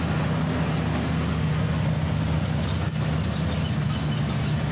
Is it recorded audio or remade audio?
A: recorded